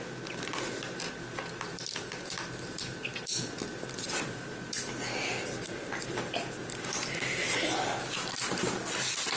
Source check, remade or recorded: recorded